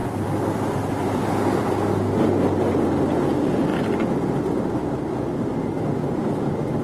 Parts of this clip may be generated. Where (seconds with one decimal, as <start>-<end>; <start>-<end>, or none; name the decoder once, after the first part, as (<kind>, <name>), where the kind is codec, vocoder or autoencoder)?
0.0-1.7 (vocoder, BigVGAN v2)